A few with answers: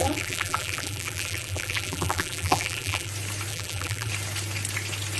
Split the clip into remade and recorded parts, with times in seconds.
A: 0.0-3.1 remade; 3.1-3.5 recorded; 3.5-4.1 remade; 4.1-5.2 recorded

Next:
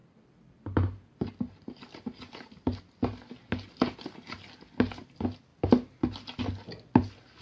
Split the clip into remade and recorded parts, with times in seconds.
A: 0.0-2.8 remade; 2.8-7.4 recorded

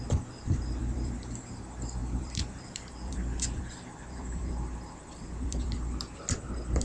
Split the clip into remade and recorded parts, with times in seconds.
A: 0.0-0.8 recorded; 0.8-1.6 remade; 1.6-2.0 recorded; 2.0-6.1 remade; 6.1-6.8 recorded